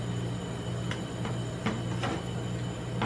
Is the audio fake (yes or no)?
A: no